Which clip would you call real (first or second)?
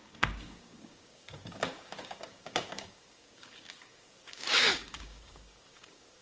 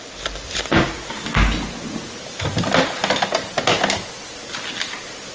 second